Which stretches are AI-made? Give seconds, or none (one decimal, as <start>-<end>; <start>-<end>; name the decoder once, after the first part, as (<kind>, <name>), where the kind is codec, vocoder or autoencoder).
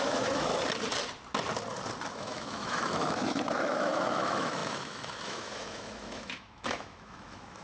0.0-0.5 (autoencoder, DAC-VAE); 2.1-7.6